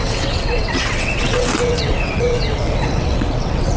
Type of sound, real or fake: fake